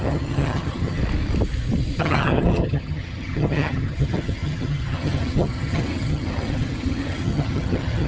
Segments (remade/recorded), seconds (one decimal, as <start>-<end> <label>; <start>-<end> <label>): 0.0-1.0 remade; 1.0-2.0 recorded; 2.0-8.1 remade